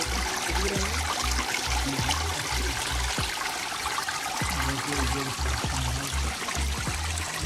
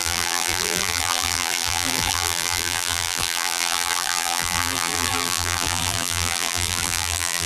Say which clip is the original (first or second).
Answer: first